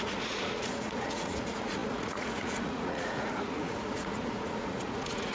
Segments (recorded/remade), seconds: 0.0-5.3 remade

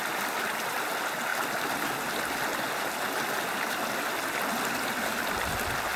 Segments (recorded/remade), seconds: 0.0-6.0 recorded

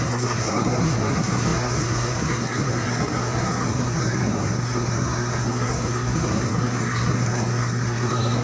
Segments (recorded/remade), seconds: 0.0-8.4 remade